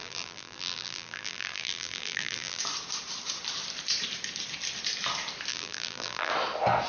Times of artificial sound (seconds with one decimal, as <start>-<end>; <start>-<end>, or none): 0.0-2.6; 5.5-6.3